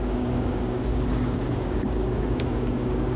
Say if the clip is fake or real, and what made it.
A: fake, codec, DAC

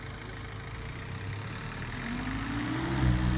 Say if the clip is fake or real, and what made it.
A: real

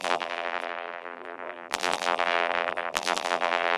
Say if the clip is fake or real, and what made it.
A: fake, vocoder, BigVGAN v2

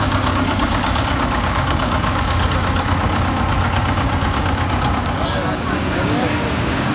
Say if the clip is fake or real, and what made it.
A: fake, codec, DAC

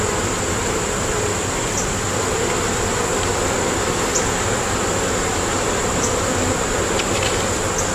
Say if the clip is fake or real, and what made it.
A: real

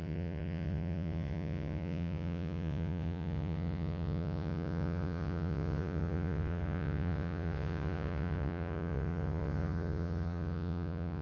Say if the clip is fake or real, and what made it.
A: fake, vocoder, Vocos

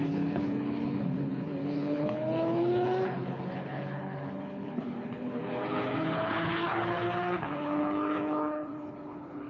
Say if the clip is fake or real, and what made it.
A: fake, codec, HILCodec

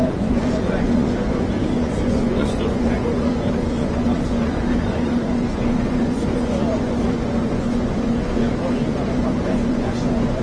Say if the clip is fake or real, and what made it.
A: fake, vocoder, Vocos